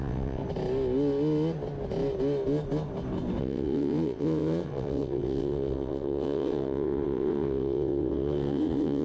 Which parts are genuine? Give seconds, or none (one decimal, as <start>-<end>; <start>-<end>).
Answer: 0.4-3.4